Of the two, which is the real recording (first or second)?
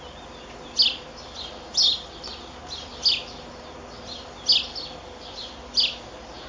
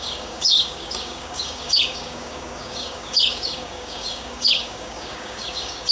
first